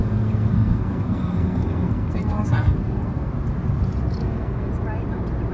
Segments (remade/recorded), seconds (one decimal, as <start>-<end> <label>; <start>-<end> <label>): 0.0-3.3 remade; 3.3-4.2 recorded; 4.2-4.7 remade; 4.7-5.5 recorded